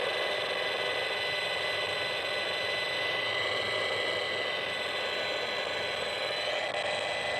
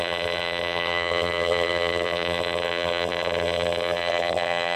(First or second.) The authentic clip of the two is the first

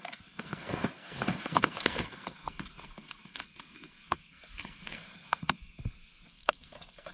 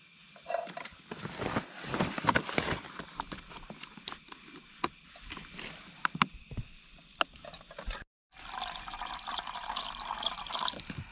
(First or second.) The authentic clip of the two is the second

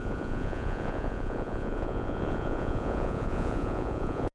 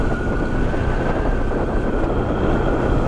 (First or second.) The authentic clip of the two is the second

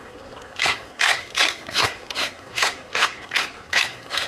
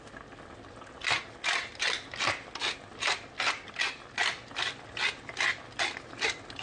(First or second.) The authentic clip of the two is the second